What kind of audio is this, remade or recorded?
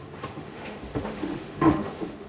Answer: remade